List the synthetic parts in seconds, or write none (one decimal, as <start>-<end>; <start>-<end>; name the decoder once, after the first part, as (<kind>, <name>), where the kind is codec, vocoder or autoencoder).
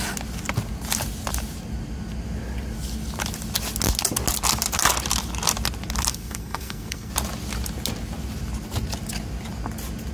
6.1-7.1 (codec, SNAC)